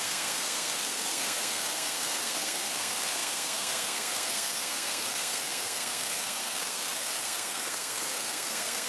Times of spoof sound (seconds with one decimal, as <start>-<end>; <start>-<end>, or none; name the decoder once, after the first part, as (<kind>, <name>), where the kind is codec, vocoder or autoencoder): 0.0-8.9 (codec, SNAC)